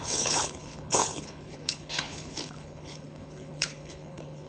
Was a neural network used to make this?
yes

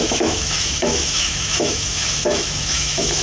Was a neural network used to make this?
yes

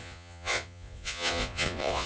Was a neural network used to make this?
yes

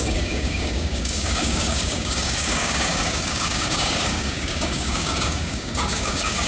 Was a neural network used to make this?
yes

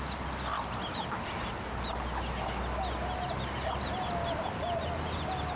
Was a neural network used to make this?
no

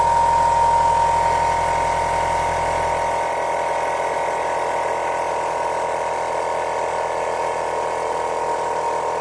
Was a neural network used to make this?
no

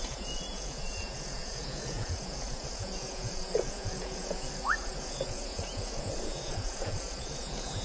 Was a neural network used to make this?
yes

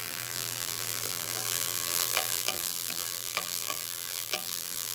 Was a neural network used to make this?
yes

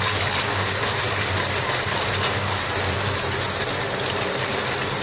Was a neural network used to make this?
no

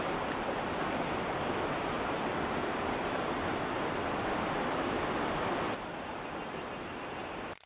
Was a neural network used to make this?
yes